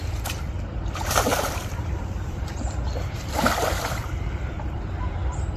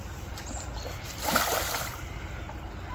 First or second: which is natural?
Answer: second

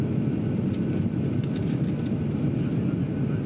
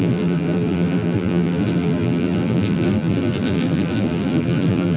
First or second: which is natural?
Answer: first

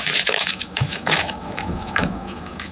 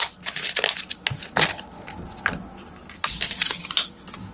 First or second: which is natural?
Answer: second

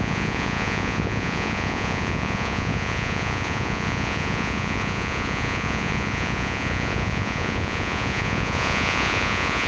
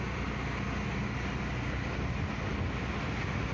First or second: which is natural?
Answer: second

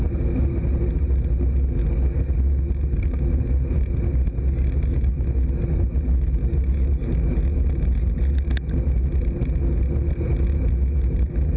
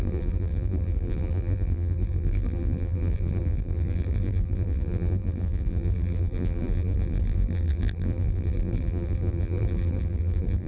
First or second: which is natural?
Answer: first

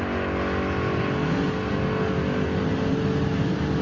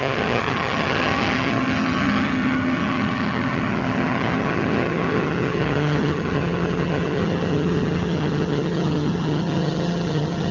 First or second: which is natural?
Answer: first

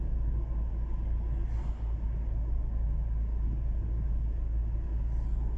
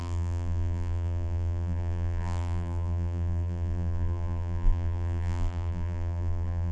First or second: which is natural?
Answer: first